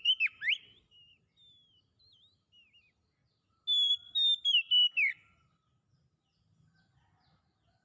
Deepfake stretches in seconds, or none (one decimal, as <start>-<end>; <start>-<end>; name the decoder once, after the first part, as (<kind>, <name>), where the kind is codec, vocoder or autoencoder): none